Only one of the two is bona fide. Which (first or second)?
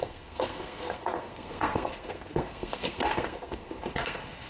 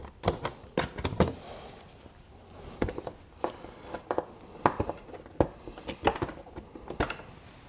second